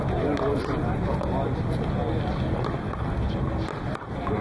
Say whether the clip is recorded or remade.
recorded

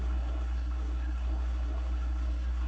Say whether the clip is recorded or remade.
remade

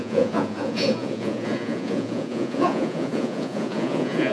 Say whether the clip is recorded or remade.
remade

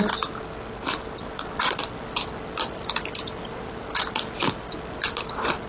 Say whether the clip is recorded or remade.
recorded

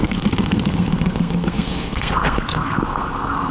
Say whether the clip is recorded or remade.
remade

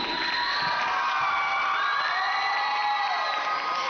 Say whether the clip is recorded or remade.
recorded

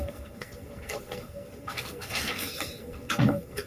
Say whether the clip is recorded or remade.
remade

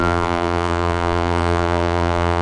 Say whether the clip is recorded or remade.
remade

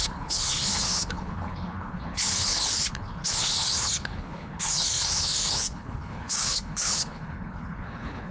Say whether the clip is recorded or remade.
remade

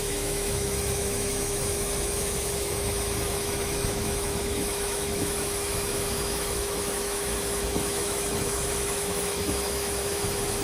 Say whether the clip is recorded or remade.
remade